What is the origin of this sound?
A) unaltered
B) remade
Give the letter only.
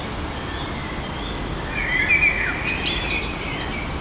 A